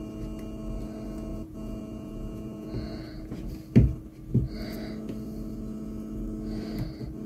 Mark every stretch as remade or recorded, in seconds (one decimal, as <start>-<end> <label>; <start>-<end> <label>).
0.0-1.3 recorded; 1.3-3.5 remade; 3.5-7.3 recorded